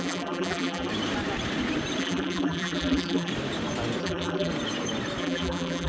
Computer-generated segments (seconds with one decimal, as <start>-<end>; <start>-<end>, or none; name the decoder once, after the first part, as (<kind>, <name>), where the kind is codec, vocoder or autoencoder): 0.0-0.9 (vocoder, BigVGAN v2); 2.0-3.3; 4.0-4.5; 5.2-5.9